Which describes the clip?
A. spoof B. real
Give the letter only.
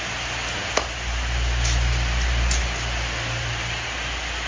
B